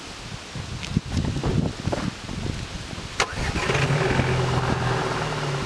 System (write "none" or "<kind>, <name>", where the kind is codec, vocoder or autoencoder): none